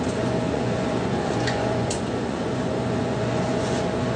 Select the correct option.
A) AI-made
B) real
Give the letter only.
A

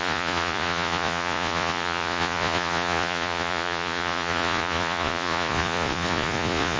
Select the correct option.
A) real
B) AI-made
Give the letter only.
B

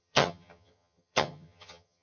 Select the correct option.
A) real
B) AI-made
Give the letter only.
B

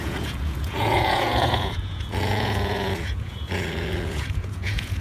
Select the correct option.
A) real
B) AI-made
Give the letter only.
B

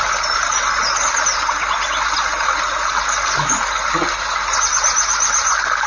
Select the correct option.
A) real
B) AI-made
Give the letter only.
A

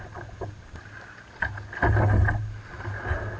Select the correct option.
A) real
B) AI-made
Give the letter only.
A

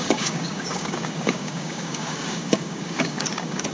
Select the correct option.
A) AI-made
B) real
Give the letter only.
A